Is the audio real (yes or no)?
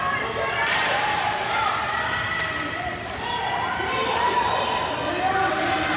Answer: yes